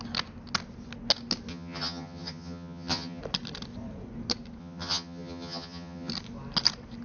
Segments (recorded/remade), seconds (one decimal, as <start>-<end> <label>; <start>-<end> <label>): 0.0-1.5 recorded; 1.5-3.2 remade; 3.2-4.6 recorded; 4.6-6.1 remade; 6.1-7.0 recorded